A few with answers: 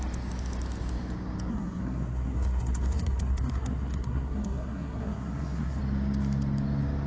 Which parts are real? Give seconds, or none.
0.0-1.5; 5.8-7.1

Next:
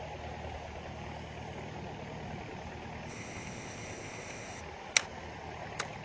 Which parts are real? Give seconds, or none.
0.0-3.1; 4.6-6.0

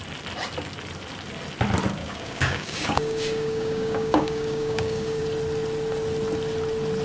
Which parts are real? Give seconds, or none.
0.0-2.0; 5.2-7.0

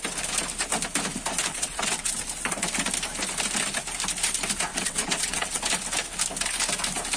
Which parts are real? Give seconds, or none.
0.0-1.5; 2.2-4.7; 5.7-7.2

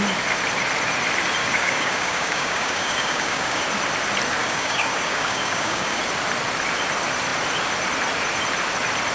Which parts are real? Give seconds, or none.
0.0-1.4; 3.6-4.4; 6.0-9.1

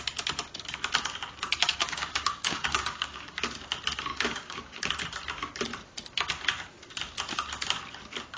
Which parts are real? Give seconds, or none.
0.0-1.7; 3.4-4.1; 4.9-8.4

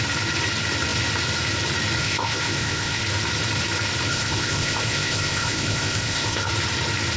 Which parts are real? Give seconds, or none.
0.0-2.0; 3.0-4.1; 6.5-7.2

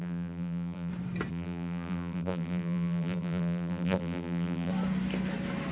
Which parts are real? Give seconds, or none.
0.9-1.3; 4.7-5.7